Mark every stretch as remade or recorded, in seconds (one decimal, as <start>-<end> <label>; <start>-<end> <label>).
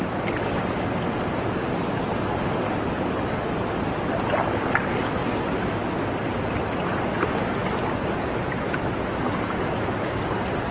0.0-10.7 recorded